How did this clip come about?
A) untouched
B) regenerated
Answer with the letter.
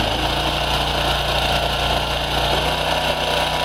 A